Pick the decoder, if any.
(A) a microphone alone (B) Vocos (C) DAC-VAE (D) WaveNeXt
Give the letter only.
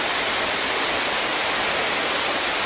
A